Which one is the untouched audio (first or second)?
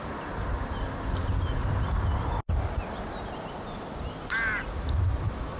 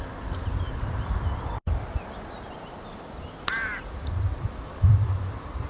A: first